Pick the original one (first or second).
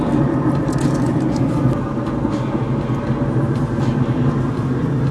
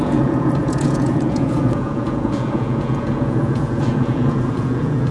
first